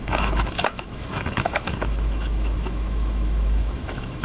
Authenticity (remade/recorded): remade